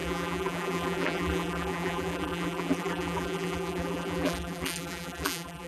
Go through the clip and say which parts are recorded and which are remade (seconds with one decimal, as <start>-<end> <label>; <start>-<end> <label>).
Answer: 0.0-5.7 remade